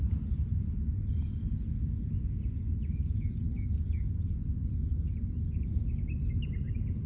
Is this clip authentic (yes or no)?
yes